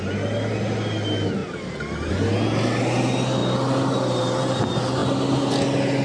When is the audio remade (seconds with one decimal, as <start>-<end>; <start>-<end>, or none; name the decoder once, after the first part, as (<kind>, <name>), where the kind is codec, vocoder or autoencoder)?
none